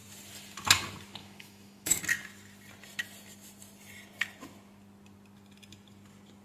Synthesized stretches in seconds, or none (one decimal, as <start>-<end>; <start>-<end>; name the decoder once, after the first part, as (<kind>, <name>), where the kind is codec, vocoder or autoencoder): 1.2-2.0 (autoencoder, DAC-VAE)